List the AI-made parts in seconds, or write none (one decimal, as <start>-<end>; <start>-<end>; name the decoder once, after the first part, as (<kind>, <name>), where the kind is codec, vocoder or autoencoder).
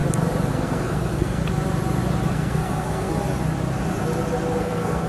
0.5-1.4 (codec, SNAC); 2.3-3.1; 4.6-5.1